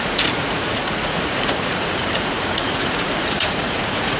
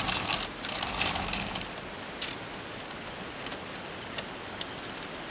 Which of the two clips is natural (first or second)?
second